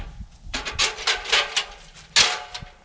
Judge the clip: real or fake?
real